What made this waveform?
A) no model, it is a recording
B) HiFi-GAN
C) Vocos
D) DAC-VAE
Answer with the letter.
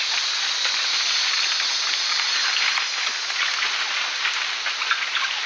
A